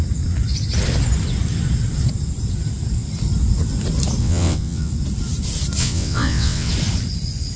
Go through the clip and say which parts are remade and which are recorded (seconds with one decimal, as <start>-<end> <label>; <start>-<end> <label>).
0.0-4.2 recorded; 4.2-4.9 remade; 4.9-5.8 recorded; 5.8-6.7 remade; 6.7-7.6 recorded